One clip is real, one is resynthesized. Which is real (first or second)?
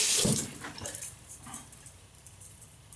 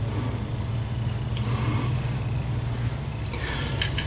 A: second